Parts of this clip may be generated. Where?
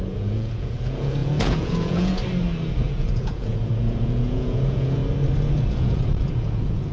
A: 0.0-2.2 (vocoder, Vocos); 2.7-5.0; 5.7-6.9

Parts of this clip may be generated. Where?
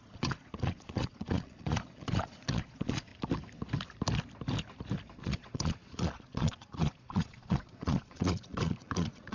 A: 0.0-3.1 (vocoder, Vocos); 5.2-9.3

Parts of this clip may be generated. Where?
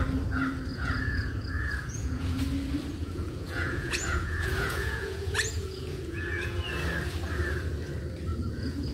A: 0.7-2.4 (vocoder, Vocos); 3.0-6.7; 8.3-8.9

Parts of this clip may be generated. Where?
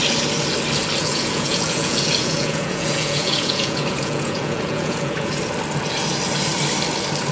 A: 1.0-5.4 (vocoder, Vocos)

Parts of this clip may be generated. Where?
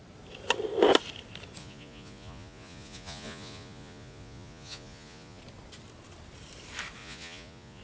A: 1.6-5.4 (vocoder, Vocos); 7.0-7.8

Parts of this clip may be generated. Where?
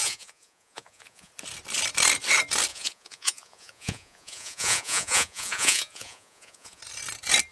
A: 0.0-1.3 (vocoder, Vocos); 2.7-6.8